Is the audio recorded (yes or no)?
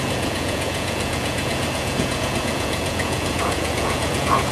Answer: no